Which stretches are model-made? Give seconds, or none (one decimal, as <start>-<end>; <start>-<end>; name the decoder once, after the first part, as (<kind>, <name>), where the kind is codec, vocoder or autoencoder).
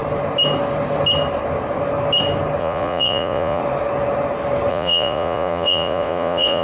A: 2.6-3.6 (vocoder, Vocos); 4.7-6.6